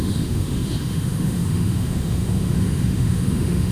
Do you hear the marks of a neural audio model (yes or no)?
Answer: yes